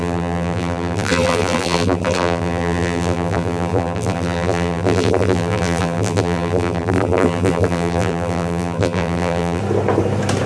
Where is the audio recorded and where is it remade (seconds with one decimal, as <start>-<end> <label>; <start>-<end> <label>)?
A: 0.0-9.6 remade; 9.6-10.5 recorded